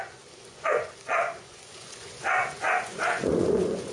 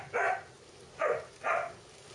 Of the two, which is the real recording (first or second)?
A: second